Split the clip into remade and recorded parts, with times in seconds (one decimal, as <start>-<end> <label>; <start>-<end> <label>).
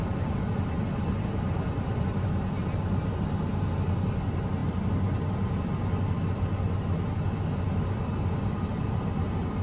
0.0-9.6 recorded